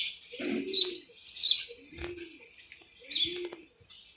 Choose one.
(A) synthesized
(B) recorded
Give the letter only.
B